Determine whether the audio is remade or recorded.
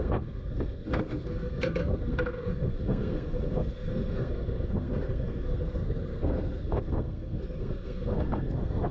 remade